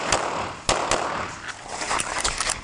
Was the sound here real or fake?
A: real